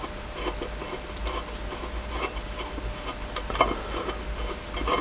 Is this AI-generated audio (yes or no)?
no